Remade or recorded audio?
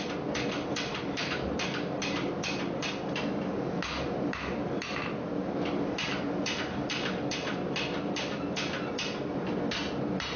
recorded